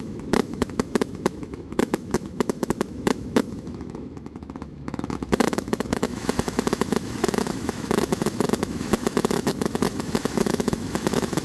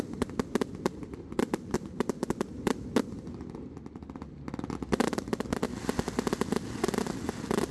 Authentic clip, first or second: second